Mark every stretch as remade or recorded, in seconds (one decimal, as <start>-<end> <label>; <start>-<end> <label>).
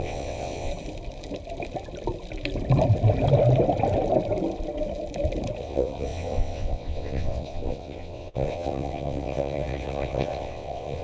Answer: 0.0-0.7 remade; 0.7-5.6 recorded; 5.6-11.0 remade